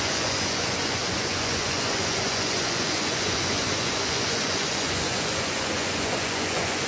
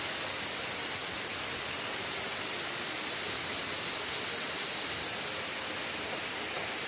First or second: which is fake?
first